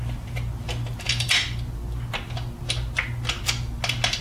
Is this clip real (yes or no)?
yes